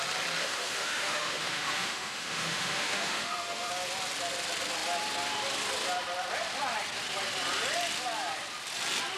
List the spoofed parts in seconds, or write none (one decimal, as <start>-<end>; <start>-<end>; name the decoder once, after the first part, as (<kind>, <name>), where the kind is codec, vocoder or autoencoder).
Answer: 0.4-3.7 (autoencoder, DAC-VAE)